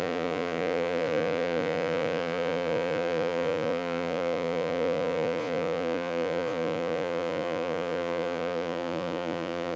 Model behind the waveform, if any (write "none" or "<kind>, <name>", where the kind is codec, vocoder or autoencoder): vocoder, Vocos